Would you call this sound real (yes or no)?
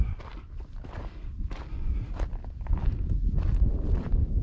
yes